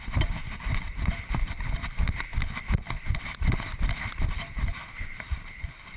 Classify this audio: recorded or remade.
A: recorded